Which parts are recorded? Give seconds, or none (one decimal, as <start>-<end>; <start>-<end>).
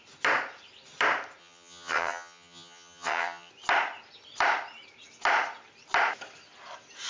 0.0-1.4; 3.5-7.1